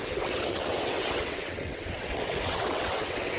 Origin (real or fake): fake